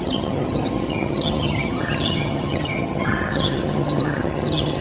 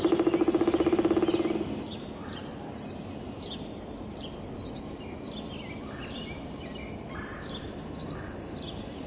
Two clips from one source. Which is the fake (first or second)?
first